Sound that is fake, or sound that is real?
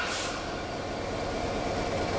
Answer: real